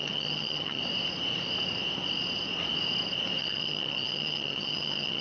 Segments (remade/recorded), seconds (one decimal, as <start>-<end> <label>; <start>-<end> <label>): 0.0-0.8 remade; 0.8-3.4 recorded; 3.4-5.2 remade